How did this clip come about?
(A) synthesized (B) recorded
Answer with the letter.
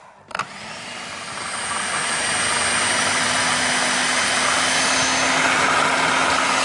B